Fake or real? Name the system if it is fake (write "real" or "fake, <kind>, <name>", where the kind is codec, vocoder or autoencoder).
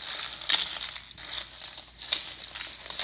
real